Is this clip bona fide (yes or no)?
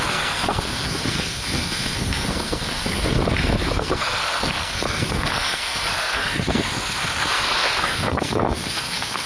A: no